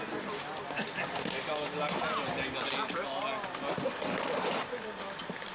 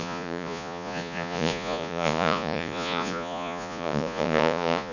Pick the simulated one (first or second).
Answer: second